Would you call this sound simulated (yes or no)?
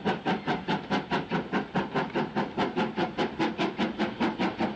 no